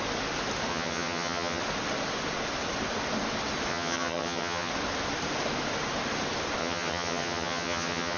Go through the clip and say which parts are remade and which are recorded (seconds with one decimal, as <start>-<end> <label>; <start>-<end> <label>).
0.0-0.7 recorded; 0.7-1.6 remade; 1.6-3.7 recorded; 3.7-4.7 remade; 4.7-6.6 recorded; 6.6-8.2 remade